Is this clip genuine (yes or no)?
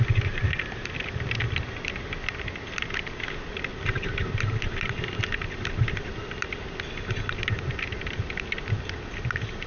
yes